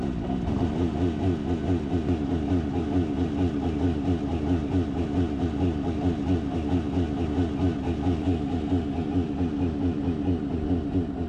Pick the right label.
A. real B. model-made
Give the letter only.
A